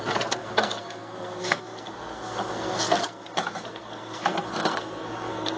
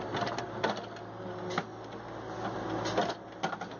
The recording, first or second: second